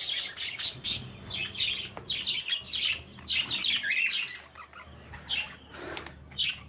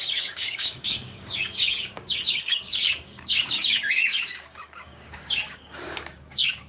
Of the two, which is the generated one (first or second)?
second